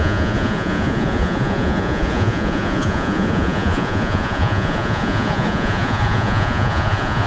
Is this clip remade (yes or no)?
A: yes